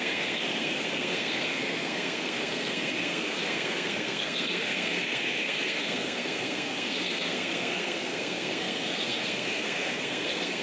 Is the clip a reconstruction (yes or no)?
yes